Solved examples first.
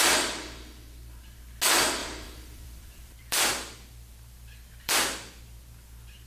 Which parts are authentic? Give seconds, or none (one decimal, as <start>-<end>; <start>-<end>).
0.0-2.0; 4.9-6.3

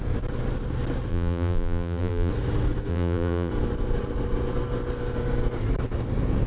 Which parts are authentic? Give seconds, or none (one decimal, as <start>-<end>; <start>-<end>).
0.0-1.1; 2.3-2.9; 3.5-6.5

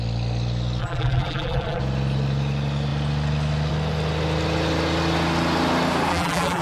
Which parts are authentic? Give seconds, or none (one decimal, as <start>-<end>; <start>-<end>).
0.0-0.8; 1.8-6.1

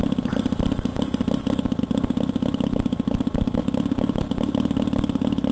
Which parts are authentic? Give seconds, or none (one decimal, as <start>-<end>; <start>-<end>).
0.0-5.5

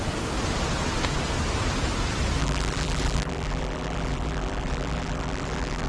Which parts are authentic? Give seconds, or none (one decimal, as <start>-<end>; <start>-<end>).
0.0-2.4